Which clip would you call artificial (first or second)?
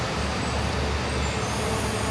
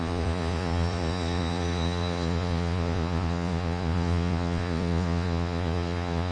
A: second